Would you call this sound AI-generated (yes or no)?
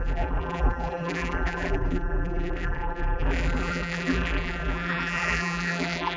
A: yes